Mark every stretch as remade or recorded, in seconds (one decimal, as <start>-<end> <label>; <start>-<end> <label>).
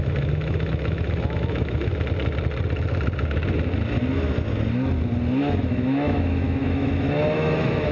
0.0-1.9 remade; 1.9-5.4 recorded; 5.4-7.9 remade